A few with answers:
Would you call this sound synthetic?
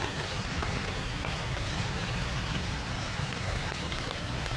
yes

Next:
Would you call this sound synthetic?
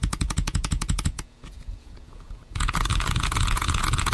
yes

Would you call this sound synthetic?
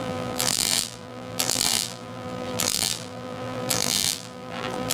yes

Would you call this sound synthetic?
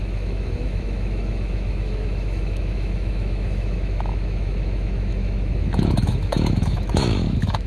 yes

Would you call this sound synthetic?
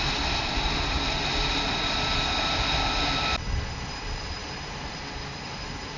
no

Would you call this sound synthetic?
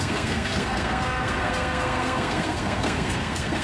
yes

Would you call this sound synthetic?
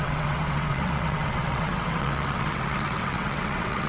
yes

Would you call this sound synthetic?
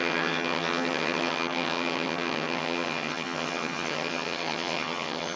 yes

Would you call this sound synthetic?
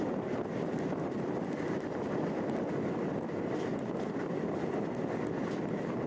no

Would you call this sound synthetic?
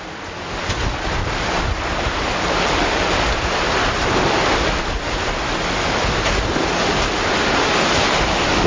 no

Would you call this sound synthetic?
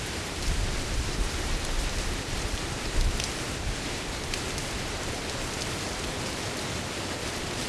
yes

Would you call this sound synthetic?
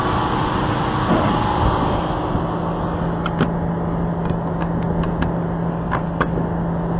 no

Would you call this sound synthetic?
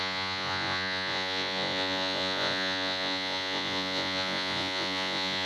yes